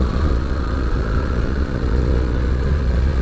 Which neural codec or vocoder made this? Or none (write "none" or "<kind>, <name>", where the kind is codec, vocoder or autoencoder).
vocoder, Vocos